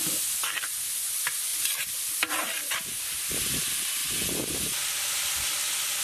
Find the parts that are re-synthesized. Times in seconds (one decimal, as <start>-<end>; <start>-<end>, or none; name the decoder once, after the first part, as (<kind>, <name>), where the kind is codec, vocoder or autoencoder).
none

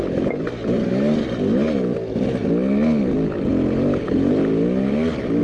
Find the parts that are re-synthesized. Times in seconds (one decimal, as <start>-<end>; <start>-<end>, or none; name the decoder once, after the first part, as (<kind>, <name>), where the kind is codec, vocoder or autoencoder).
none

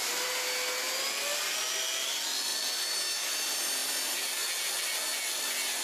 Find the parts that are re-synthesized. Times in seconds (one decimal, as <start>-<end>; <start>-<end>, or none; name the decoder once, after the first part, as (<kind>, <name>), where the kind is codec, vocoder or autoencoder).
none

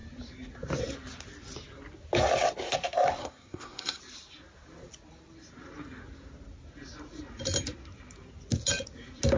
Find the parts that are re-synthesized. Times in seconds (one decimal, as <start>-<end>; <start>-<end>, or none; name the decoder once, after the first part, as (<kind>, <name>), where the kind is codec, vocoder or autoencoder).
3.2-4.0 (codec, SNAC)

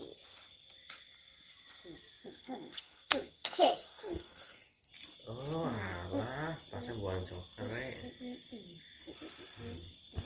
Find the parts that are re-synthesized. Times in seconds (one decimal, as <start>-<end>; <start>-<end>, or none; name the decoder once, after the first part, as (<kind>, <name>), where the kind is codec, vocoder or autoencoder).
2.2-4.9 (codec, SNAC)

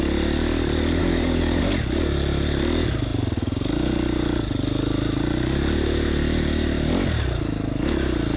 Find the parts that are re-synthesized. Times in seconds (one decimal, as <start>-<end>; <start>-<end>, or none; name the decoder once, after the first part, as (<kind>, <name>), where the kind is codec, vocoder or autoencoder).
1.0-1.6 (codec, DAC)